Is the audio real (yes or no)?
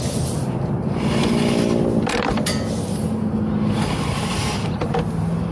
yes